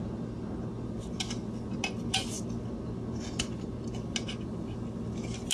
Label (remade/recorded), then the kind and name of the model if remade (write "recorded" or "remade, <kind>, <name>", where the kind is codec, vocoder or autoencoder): recorded